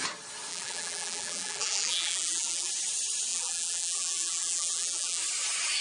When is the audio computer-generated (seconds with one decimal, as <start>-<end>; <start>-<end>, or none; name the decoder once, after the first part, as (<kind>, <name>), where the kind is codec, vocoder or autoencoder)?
0.5-2.7 (vocoder, BigVGAN v2); 3.3-5.2